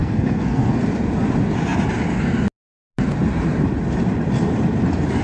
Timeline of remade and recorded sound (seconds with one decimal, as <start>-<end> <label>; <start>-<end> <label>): 0.0-0.8 remade; 0.8-5.2 recorded